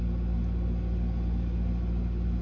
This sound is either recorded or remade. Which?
recorded